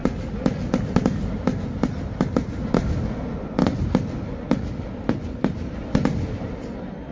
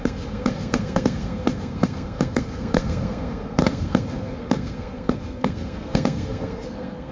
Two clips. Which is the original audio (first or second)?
first